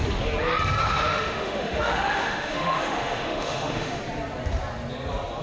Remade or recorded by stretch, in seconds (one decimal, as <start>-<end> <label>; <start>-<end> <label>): 0.0-0.8 recorded; 0.8-4.0 remade; 4.0-5.4 recorded